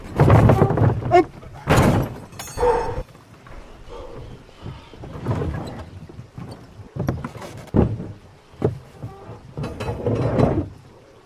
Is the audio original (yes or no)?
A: yes